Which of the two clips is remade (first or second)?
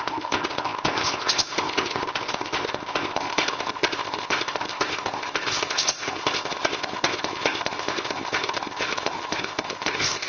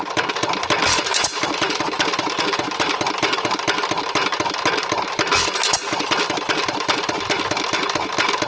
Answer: first